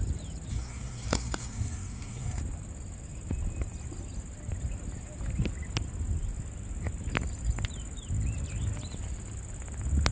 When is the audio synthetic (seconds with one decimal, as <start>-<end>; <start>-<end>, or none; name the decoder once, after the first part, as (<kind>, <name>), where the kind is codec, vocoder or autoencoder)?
0.5-2.4 (codec, SNAC)